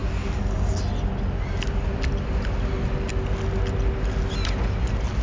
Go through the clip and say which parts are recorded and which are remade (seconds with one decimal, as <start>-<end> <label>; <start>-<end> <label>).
0.0-5.2 recorded

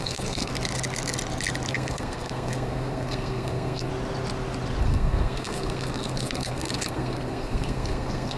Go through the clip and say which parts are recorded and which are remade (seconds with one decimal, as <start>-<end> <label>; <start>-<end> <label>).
0.0-0.5 remade; 0.5-1.7 recorded; 1.7-3.9 remade; 3.9-4.8 recorded; 4.8-8.4 remade

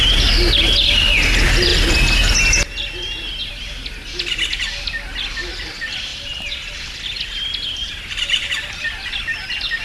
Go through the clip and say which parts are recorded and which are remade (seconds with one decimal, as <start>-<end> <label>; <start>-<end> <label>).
0.0-6.1 recorded; 6.1-6.8 remade; 6.8-7.8 recorded; 7.8-8.5 remade; 8.5-9.8 recorded